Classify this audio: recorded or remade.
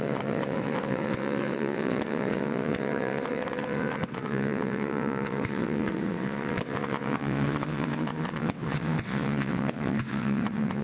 remade